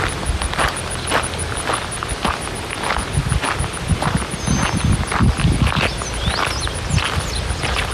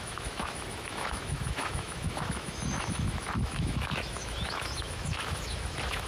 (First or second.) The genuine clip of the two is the first